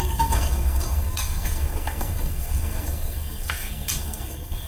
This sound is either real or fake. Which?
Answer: fake